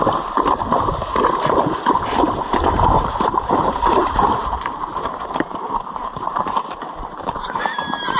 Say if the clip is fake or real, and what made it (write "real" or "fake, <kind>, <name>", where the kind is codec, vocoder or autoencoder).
fake, vocoder, BigVGAN v2